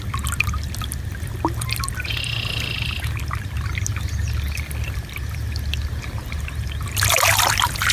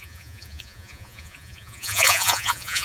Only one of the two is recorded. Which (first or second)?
first